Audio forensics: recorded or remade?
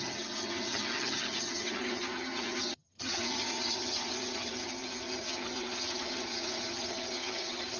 remade